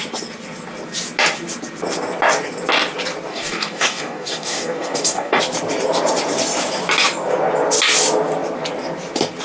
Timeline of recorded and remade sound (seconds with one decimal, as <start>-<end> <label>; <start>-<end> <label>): 0.0-3.3 recorded; 3.3-5.4 remade; 5.4-9.4 recorded